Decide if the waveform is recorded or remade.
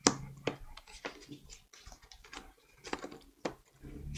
recorded